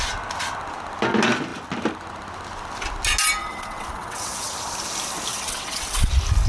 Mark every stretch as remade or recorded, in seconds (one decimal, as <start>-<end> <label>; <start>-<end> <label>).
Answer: 0.0-3.4 recorded; 3.4-4.5 remade; 4.5-5.3 recorded; 5.3-6.1 remade; 6.1-6.5 recorded